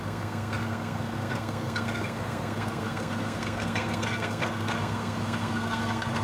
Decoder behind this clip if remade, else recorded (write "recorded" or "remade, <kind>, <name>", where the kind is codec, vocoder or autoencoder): remade, codec, SNAC